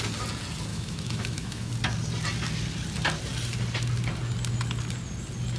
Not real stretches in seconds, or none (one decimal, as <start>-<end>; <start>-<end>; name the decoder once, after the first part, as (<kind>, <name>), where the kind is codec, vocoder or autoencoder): 0.7-1.7 (autoencoder, DAC-VAE)